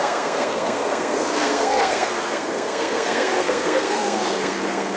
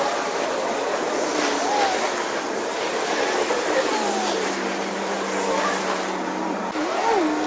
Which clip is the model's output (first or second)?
first